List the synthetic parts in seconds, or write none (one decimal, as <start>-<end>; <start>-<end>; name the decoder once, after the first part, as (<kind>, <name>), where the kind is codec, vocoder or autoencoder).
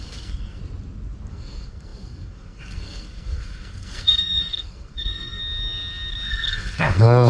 0.0-0.6 (codec, SNAC); 1.3-5.4; 6.3-7.3